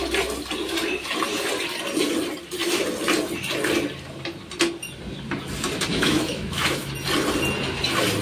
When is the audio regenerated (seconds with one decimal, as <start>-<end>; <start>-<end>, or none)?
5.9-6.9